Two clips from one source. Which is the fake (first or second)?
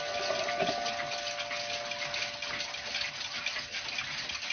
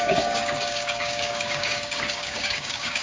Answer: second